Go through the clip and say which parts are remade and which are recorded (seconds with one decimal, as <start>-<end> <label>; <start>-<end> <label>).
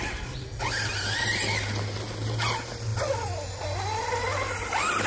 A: 0.0-5.1 recorded